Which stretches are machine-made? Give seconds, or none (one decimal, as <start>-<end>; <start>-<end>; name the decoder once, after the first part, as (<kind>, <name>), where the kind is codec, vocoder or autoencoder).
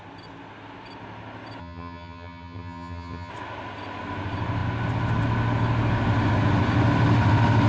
1.6-3.3 (vocoder, HiFi-GAN)